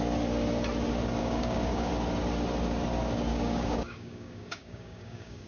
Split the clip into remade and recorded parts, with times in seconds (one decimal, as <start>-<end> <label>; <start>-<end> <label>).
0.0-1.2 recorded; 1.2-1.9 remade; 1.9-3.3 recorded; 3.3-5.5 remade